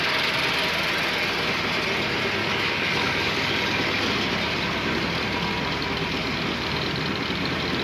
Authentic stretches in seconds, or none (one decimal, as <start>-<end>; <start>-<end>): 0.0-2.4; 3.5-7.8